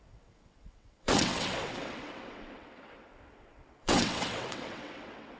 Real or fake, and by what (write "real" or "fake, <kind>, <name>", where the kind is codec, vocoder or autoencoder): fake, vocoder, WaveNeXt